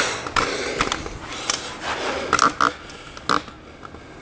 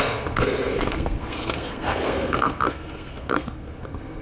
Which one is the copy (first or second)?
second